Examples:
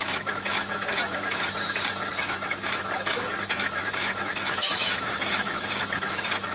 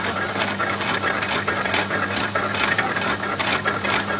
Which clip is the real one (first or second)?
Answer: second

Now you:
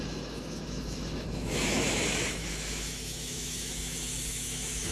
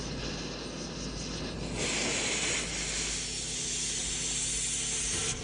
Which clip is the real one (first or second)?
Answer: second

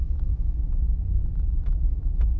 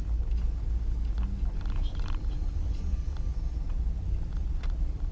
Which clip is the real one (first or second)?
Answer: second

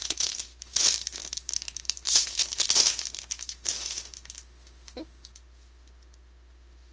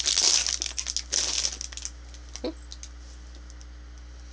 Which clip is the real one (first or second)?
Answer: second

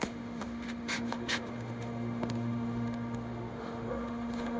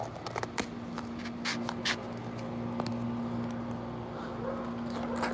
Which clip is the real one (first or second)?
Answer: second